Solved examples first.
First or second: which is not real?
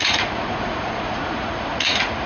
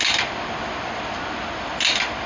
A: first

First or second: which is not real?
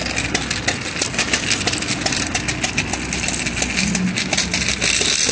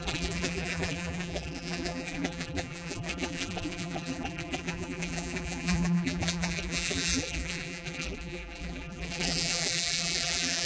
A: second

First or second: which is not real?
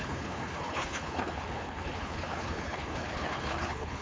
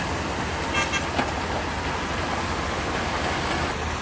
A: first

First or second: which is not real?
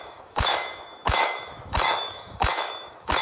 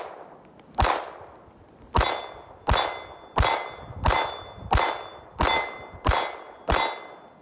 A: first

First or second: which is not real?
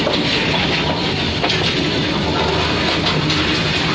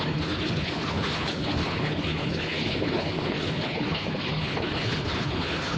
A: second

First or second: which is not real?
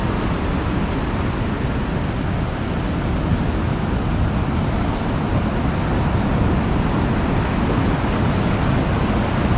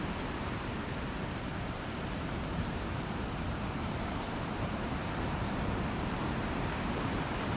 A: second